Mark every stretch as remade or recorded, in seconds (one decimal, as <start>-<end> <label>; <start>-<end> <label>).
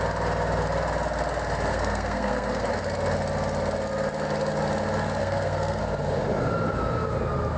0.0-1.7 recorded; 1.7-2.7 remade; 2.7-5.2 recorded; 5.2-5.8 remade; 5.8-7.6 recorded